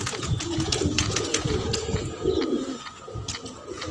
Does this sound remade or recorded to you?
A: remade